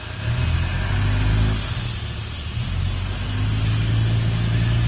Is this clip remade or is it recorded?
recorded